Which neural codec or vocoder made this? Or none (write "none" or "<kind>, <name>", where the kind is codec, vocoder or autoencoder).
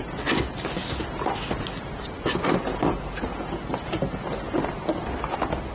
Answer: none